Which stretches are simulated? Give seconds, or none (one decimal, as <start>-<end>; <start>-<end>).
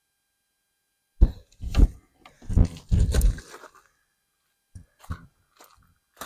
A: none